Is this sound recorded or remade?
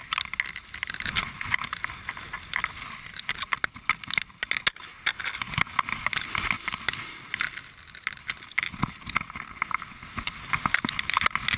recorded